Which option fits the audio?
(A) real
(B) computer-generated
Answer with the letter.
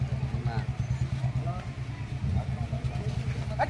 A